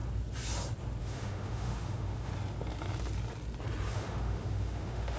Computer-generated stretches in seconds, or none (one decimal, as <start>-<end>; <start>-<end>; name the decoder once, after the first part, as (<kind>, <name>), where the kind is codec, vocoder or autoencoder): 1.0-2.3 (autoencoder, DAC-VAE); 3.9-5.2